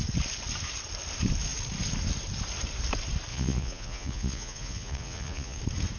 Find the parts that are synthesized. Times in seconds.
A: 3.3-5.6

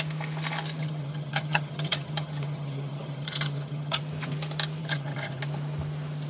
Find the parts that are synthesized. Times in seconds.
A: 0.8-4.0; 4.8-5.4